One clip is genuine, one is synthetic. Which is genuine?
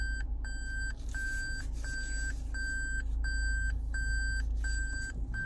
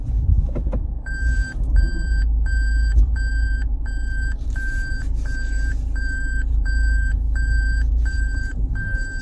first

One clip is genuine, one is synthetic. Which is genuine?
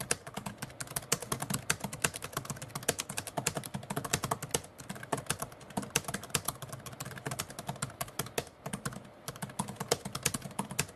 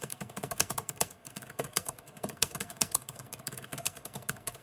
first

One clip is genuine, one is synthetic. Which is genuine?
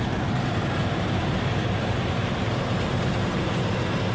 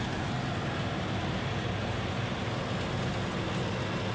second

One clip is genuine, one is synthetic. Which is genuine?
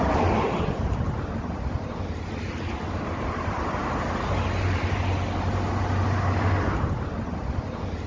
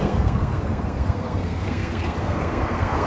first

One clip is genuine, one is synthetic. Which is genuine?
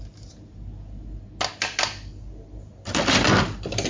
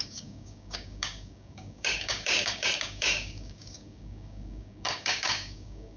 first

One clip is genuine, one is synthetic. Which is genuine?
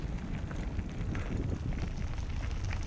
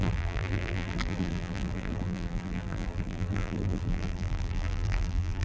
first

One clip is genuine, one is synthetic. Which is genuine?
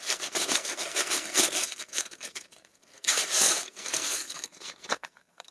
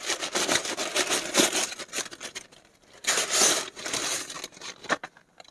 second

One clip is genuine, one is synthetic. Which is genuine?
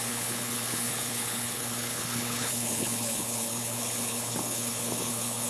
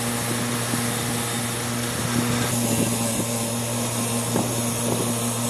second